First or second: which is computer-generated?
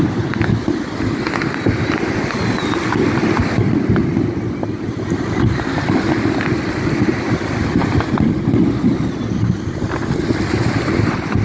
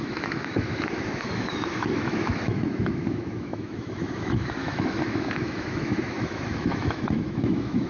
second